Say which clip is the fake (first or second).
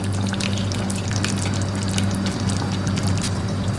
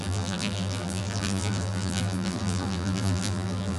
second